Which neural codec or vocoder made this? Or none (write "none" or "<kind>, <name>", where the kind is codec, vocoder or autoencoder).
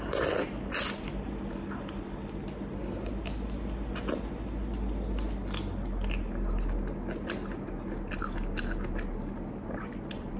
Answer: none